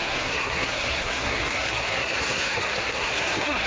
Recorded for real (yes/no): no